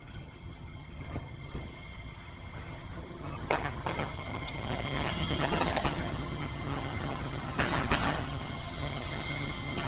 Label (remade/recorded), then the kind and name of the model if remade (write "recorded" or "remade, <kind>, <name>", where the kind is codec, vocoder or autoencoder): remade, vocoder, HiFi-GAN